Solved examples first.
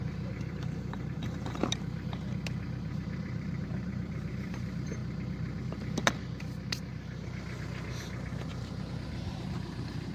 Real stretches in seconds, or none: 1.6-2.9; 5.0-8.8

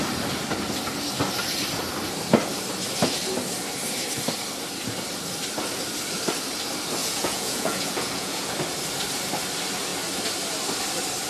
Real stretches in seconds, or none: 0.0-7.0; 8.5-11.3

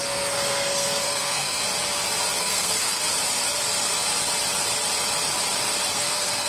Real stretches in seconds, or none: 1.6-2.4; 3.1-5.9